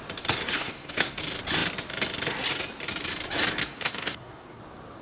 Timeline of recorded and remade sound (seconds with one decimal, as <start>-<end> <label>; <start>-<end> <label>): 0.0-0.5 recorded; 0.5-1.2 remade; 1.2-3.6 recorded; 3.6-4.6 remade; 4.6-5.0 recorded